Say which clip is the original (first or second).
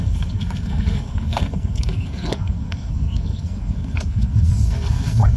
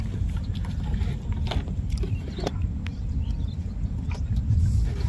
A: second